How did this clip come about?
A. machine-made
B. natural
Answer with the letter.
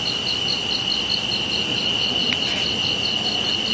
B